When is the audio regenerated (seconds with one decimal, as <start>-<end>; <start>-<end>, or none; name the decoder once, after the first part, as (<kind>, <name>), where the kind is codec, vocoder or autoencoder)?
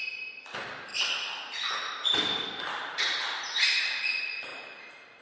none